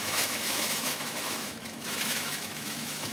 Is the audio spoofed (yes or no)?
yes